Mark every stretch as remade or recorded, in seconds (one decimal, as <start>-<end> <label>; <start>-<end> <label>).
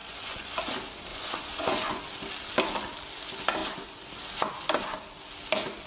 0.0-0.6 remade; 0.6-1.1 recorded; 1.1-2.0 remade; 2.0-5.9 recorded